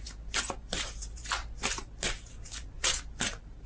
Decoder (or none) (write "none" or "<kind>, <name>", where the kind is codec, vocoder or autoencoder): none